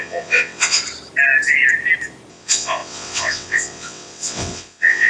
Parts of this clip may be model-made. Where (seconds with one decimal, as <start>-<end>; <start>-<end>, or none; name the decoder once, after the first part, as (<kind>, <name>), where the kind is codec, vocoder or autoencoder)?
0.0-0.8 (vocoder, WaveNeXt); 2.3-5.1